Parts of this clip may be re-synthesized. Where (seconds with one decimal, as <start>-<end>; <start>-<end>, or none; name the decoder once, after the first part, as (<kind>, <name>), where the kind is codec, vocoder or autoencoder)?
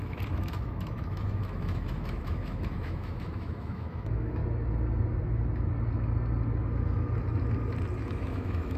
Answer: 0.0-4.4 (autoencoder, DAC-VAE); 8.0-8.8